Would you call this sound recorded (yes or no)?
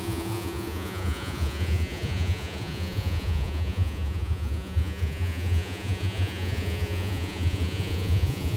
no